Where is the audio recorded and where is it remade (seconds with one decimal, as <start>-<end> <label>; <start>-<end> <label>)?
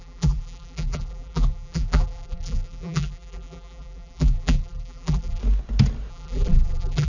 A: 0.0-5.4 remade; 5.4-6.1 recorded; 6.1-7.1 remade